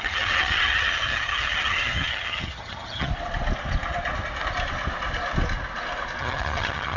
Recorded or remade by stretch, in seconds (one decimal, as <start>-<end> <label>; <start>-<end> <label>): 0.0-3.1 remade; 3.1-6.2 recorded; 6.2-7.0 remade